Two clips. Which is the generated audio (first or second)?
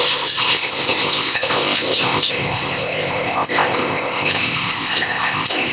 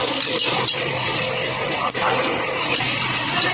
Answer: first